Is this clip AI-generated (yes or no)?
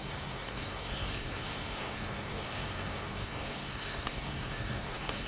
yes